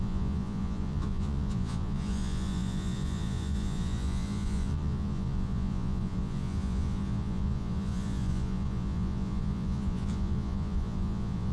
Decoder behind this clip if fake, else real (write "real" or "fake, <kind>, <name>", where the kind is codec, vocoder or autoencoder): fake, vocoder, Vocos